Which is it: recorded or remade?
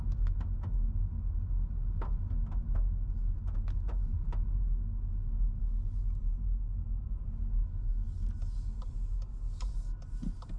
recorded